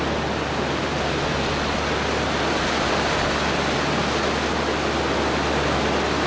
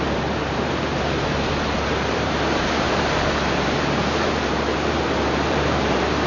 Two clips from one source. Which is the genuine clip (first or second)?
first